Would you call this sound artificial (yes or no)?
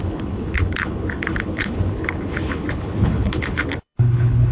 yes